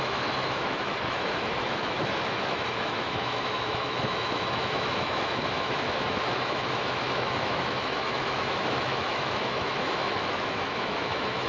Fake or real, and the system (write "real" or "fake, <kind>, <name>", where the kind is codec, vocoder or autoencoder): fake, autoencoder, DAC-VAE